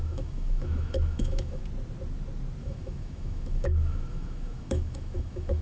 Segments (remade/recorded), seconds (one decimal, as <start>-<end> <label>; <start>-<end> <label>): 0.0-1.6 remade; 1.6-2.6 recorded; 2.6-5.6 remade